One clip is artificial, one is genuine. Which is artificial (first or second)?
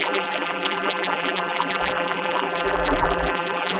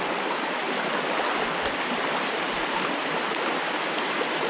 first